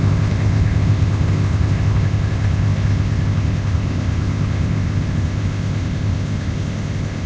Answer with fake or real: fake